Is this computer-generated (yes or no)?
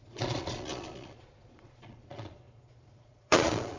yes